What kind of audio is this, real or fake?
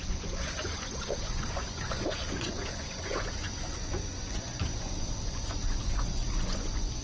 fake